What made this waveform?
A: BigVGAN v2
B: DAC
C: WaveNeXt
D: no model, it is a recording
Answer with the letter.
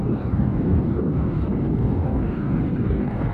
B